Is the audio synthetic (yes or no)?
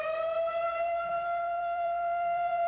yes